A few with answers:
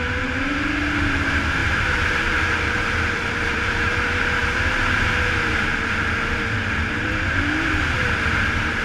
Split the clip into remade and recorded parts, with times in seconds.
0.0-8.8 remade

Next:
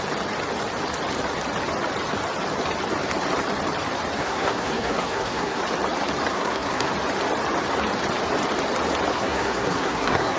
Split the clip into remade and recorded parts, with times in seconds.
0.0-4.2 recorded; 4.2-5.6 remade; 5.6-6.3 recorded; 6.3-6.9 remade; 6.9-9.1 recorded; 9.1-10.4 remade

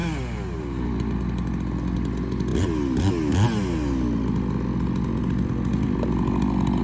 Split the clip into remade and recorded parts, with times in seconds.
0.0-0.9 remade; 0.9-6.8 recorded